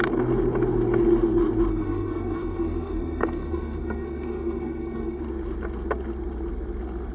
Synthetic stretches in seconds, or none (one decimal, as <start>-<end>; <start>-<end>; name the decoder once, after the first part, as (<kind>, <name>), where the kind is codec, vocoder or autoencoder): 1.7-5.2 (codec, SNAC)